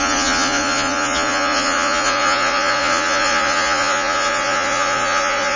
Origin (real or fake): fake